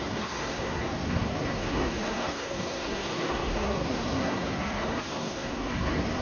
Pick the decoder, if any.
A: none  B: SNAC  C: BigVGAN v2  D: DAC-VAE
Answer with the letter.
B